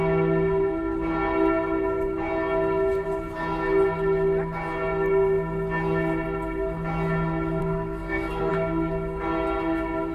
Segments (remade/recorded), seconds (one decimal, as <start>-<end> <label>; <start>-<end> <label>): 0.0-7.6 recorded; 7.6-8.5 remade; 8.5-10.1 recorded